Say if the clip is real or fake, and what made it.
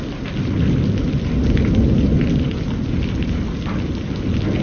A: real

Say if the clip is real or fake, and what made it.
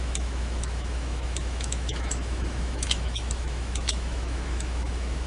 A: fake, autoencoder, DAC-VAE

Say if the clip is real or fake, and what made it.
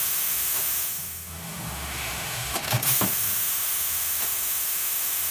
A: fake, autoencoder, DAC-VAE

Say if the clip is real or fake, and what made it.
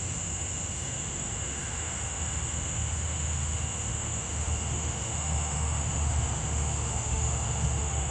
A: fake, autoencoder, DAC-VAE